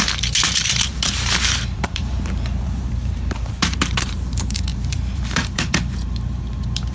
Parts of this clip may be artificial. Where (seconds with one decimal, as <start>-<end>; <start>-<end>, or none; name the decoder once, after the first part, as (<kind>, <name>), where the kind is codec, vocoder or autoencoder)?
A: 0.0-6.9 (vocoder, BigVGAN v2)